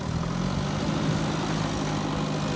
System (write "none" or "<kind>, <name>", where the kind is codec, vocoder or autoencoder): none